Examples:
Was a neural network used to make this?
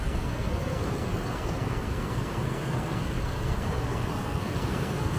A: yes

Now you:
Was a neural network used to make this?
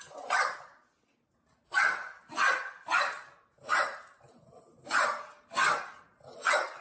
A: no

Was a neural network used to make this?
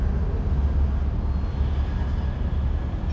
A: no